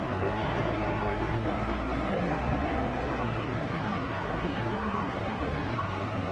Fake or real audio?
fake